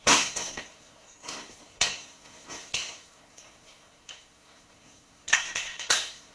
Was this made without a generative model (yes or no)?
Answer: no